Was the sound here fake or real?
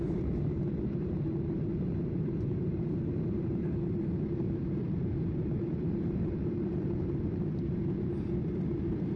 fake